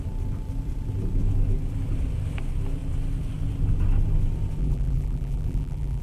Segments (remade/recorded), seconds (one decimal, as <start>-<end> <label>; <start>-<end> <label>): 0.0-4.6 recorded; 4.6-6.0 remade